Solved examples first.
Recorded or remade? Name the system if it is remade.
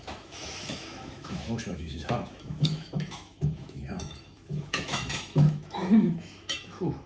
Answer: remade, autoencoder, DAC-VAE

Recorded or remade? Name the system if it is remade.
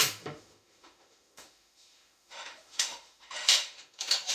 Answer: remade, autoencoder, DAC-VAE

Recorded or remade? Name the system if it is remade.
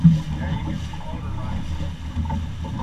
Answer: recorded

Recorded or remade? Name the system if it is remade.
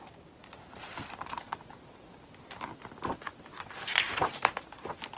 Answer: recorded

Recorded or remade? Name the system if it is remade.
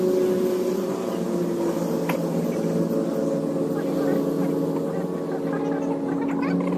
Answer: recorded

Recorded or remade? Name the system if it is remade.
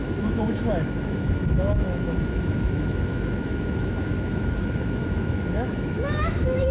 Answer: remade, autoencoder, DAC-VAE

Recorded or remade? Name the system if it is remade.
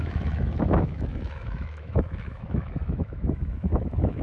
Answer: remade, autoencoder, DAC-VAE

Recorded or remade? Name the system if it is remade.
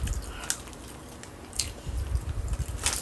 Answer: recorded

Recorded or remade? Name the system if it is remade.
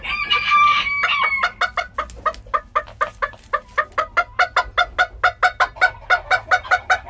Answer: recorded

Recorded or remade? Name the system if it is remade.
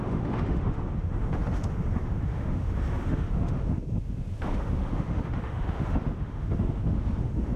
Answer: remade, autoencoder, DAC-VAE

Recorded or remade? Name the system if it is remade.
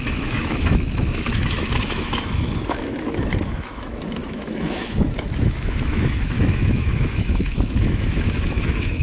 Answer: remade, autoencoder, DAC-VAE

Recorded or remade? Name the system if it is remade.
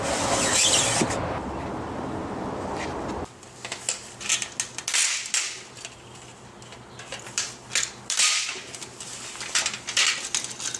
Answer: recorded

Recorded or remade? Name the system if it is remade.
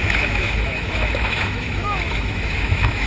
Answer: remade, autoencoder, DAC-VAE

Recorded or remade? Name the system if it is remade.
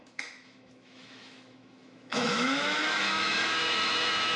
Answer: remade, autoencoder, DAC-VAE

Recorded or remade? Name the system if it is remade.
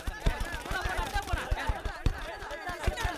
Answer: recorded